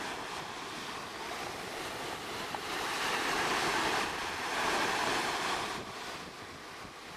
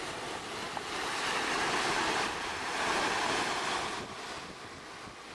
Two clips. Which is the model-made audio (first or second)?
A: first